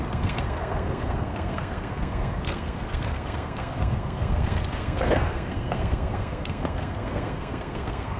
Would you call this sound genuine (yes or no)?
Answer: no